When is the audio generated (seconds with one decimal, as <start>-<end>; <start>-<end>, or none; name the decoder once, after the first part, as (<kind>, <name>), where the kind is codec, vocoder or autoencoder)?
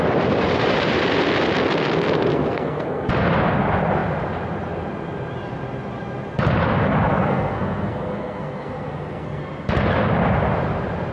2.3-3.1 (codec, SNAC); 7.1-9.4